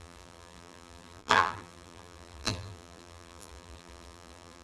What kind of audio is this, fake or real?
fake